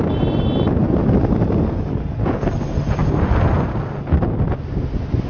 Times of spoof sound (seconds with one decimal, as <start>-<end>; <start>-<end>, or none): none